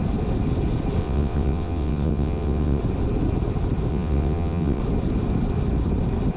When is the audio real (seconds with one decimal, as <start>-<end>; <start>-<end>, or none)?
0.0-1.0; 2.8-3.9; 4.8-6.4